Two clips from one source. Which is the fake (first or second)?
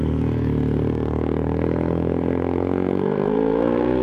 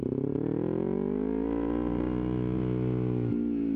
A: first